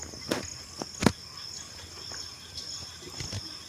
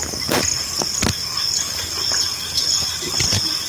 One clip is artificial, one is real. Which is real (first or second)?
first